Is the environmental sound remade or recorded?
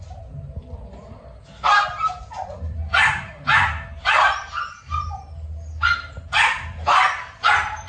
recorded